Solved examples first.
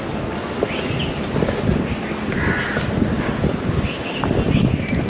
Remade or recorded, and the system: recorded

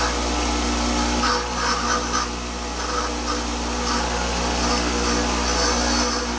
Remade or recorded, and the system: recorded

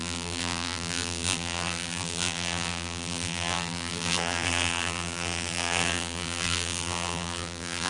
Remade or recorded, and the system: remade, vocoder, BigVGAN v2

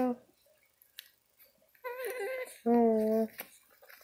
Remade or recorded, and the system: recorded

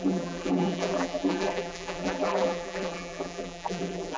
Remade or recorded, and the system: remade, vocoder, BigVGAN v2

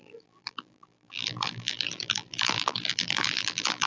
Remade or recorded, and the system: remade, vocoder, BigVGAN v2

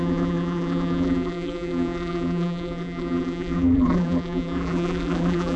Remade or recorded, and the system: remade, vocoder, BigVGAN v2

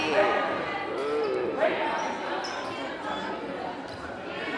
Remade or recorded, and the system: recorded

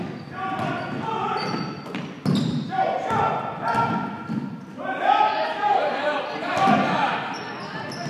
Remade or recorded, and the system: recorded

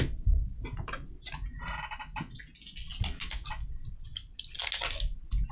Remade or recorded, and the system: recorded